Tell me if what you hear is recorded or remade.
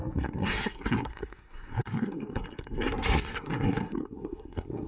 remade